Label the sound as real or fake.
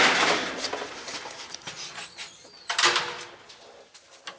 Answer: real